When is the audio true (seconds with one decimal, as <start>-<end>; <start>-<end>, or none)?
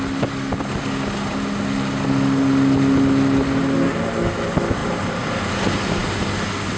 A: 0.0-6.8